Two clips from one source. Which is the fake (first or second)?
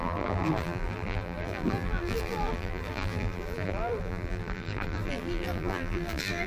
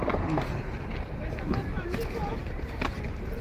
first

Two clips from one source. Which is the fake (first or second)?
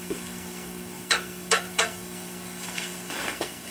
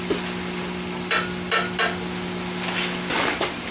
first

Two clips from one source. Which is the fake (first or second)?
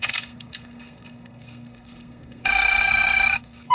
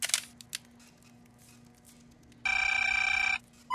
first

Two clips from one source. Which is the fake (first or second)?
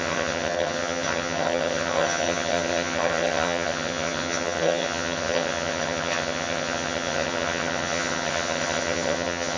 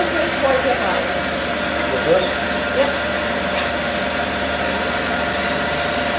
first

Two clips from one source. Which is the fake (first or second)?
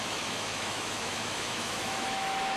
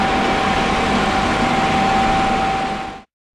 first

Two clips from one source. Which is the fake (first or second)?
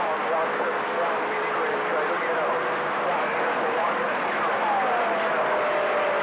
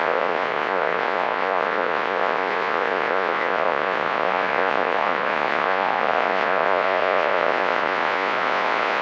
second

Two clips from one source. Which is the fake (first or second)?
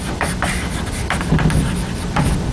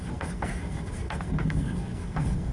second